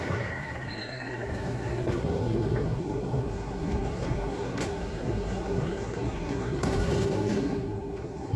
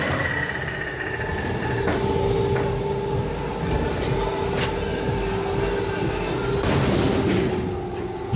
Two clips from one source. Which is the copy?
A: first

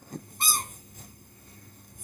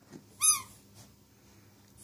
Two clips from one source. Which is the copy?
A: first